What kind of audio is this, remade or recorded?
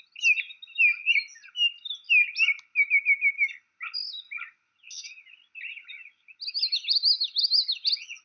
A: recorded